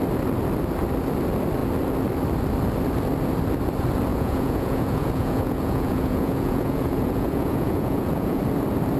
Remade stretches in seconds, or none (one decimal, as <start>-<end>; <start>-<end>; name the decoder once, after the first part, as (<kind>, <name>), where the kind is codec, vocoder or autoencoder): 4.1-8.4 (vocoder, Vocos)